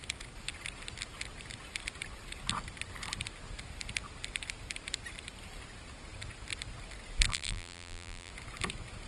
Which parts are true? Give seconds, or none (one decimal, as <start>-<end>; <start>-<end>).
0.0-7.3; 8.3-9.1

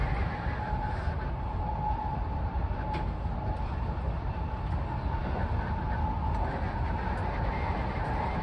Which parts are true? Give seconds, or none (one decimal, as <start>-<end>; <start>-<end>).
0.0-8.4

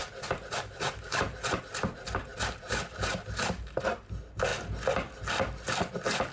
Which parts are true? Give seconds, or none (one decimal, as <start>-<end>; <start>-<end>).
1.6-2.3; 4.1-6.3

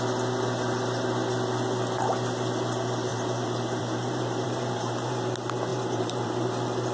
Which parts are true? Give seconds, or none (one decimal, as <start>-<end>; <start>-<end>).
0.0-3.1; 5.2-5.7; 6.5-6.9

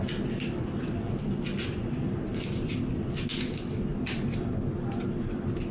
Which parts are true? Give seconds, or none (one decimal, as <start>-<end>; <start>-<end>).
0.0-2.3; 2.9-3.9; 4.8-5.7

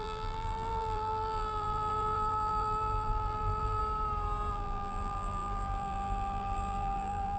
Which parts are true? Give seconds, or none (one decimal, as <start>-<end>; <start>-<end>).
3.8-4.5

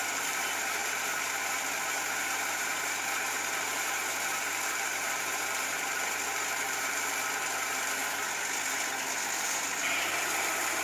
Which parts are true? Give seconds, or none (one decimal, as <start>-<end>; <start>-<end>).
8.0-9.1

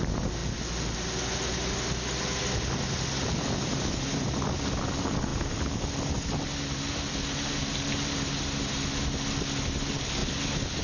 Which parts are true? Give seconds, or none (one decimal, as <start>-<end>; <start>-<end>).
0.0-10.8